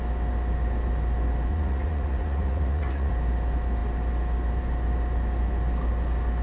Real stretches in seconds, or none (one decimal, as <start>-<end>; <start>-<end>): 0.0-1.5; 3.1-6.4